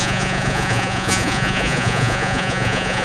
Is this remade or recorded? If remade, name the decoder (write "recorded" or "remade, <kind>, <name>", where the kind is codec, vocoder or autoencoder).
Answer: remade, vocoder, Vocos